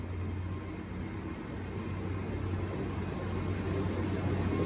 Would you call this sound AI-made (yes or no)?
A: no